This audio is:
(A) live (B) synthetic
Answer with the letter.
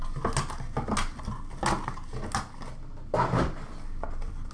A